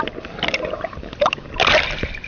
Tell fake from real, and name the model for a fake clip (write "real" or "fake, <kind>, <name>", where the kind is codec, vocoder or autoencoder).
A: real